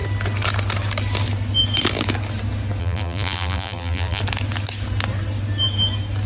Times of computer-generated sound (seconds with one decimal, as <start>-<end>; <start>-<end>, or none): 2.8-4.2